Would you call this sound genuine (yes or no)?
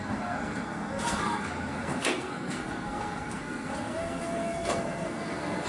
no